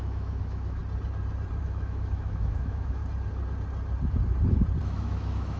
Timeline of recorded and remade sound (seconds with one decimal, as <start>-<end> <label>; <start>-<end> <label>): 0.0-0.8 remade; 0.8-1.6 recorded; 1.6-3.0 remade; 3.0-4.8 recorded; 4.8-5.6 remade